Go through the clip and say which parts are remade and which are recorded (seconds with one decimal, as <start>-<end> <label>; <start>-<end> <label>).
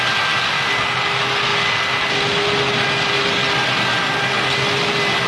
0.0-5.3 recorded